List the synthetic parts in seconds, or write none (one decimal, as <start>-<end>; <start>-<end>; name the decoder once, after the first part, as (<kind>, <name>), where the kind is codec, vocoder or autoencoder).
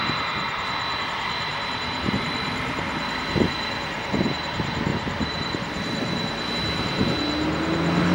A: 1.5-3.0 (vocoder, BigVGAN v2); 4.9-6.5